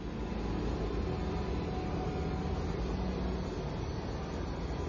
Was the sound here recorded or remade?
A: recorded